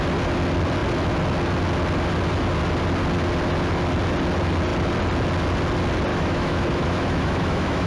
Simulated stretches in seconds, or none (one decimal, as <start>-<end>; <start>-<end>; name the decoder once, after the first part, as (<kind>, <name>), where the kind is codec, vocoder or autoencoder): 6.1-7.9 (autoencoder, DAC-VAE)